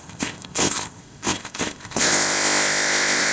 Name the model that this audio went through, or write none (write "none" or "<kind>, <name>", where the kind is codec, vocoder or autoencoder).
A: codec, ZipCodec